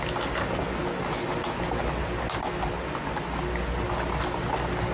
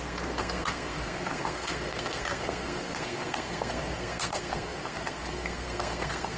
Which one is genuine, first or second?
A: first